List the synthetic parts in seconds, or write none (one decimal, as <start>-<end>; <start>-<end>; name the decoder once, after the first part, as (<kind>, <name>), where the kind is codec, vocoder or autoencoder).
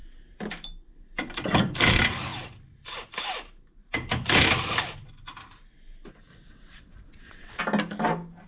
6.3-7.6 (vocoder, WaveNeXt)